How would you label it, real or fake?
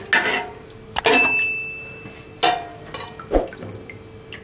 real